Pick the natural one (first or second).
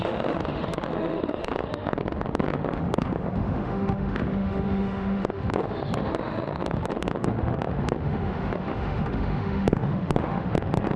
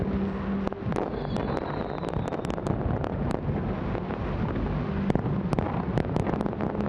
second